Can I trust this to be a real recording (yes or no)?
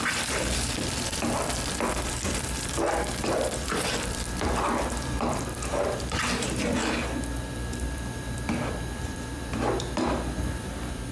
no